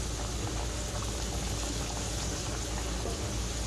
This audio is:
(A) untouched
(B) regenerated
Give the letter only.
A